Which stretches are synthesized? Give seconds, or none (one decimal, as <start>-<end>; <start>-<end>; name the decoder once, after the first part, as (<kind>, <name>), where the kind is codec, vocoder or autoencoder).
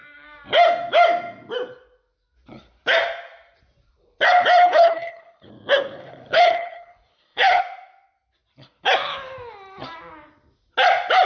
4.6-5.5 (codec, HILCodec); 6.0-7.6